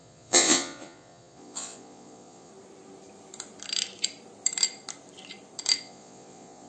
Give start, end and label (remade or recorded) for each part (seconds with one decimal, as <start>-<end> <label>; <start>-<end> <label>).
0.0-2.5 remade; 2.5-5.8 recorded; 5.8-6.7 remade